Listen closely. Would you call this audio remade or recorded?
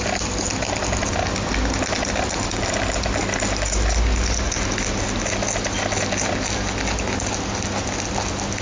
recorded